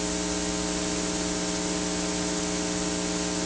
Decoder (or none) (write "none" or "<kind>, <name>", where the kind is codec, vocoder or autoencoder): none